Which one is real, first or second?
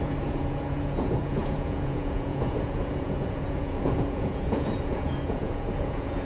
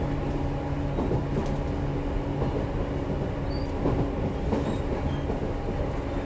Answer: second